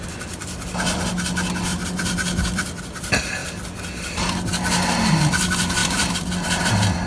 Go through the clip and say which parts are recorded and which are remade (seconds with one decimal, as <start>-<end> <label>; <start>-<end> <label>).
0.0-1.7 recorded; 1.7-2.8 remade; 2.8-5.8 recorded; 5.8-6.6 remade; 6.6-7.1 recorded